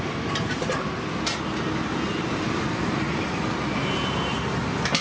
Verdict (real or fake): real